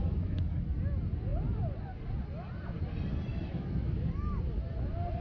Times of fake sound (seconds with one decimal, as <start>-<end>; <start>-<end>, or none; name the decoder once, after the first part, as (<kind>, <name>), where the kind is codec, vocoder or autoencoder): 0.0-0.5 (autoencoder, DAC-VAE); 3.3-4.0